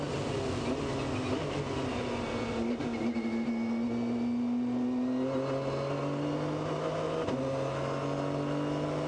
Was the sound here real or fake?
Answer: real